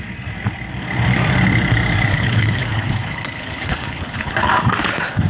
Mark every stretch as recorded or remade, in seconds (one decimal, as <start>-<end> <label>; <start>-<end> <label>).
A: 0.0-2.1 recorded; 2.1-4.3 remade; 4.3-5.3 recorded